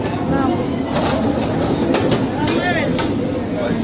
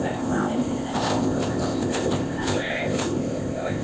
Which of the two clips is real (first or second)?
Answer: first